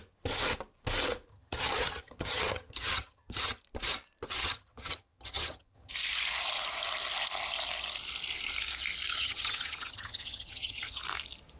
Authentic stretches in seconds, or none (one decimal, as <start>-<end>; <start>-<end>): 0.0-1.3; 3.6-4.4; 5.9-9.1; 11.0-11.6

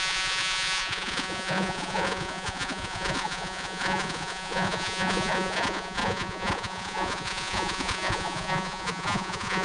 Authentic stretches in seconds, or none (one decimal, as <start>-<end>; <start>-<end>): none

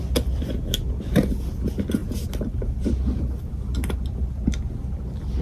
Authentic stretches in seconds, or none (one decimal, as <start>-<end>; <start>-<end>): 0.0-5.4

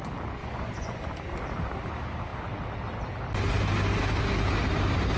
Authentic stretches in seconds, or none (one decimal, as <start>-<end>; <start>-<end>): 0.0-0.4; 1.1-5.2

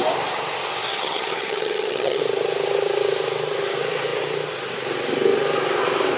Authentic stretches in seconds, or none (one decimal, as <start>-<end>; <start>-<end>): 0.0-0.9; 2.2-6.2